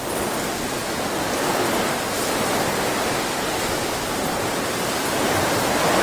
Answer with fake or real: real